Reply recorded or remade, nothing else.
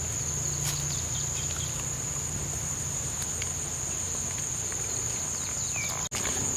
recorded